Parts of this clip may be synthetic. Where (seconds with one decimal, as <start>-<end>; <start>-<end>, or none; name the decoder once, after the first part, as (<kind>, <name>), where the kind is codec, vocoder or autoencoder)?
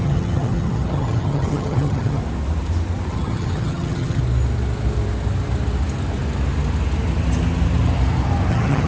0.0-2.2 (vocoder, HiFi-GAN); 3.1-4.2; 8.5-8.9